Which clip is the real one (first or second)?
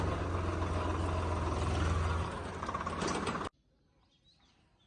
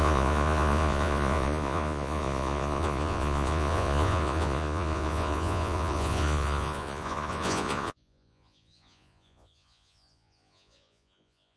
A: first